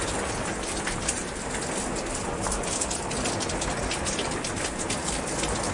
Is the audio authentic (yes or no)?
yes